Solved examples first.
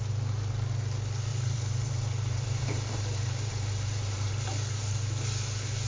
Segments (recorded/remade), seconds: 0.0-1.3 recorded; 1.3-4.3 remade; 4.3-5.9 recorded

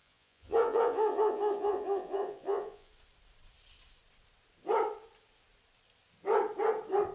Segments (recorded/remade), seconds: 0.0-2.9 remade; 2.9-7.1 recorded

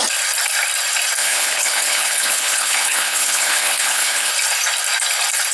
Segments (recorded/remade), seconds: 0.0-1.2 recorded; 1.2-4.3 remade; 4.3-5.5 recorded